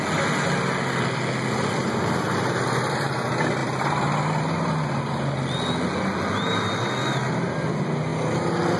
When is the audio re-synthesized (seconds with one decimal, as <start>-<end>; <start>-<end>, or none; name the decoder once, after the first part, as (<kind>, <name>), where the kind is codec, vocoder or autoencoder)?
none